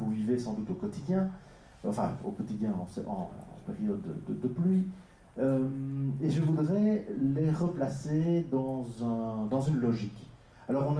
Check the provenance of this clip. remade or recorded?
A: recorded